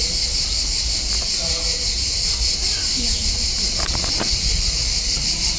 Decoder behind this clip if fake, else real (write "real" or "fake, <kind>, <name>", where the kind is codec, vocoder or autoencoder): fake, vocoder, BigVGAN v2